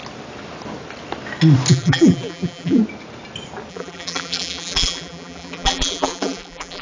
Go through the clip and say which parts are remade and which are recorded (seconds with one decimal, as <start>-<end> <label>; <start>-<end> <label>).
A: 0.0-1.7 recorded; 1.7-2.8 remade; 2.8-3.7 recorded; 3.7-6.8 remade